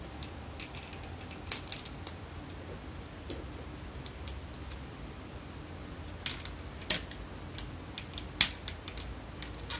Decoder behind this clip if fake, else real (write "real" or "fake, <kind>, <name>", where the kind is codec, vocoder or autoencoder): real